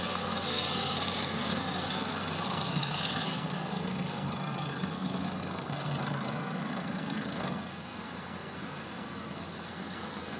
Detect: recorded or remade remade